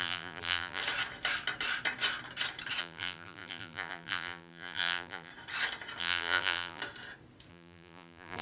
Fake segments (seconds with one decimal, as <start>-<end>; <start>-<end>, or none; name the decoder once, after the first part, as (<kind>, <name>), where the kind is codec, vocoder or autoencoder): 0.0-0.8 (vocoder, BigVGAN v2); 2.8-5.3; 6.0-6.8; 7.5-8.4